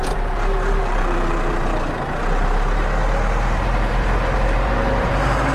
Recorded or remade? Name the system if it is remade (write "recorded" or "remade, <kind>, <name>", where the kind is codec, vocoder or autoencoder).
remade, vocoder, BigVGAN v2